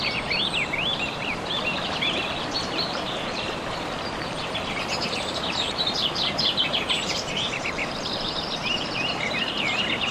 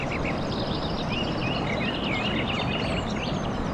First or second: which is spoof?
first